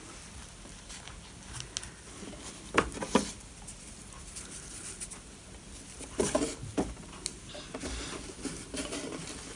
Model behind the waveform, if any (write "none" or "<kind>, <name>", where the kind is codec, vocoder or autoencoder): none